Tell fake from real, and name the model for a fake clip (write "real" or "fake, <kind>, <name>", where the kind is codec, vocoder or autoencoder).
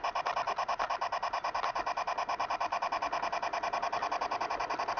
real